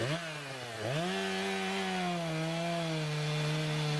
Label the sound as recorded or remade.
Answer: recorded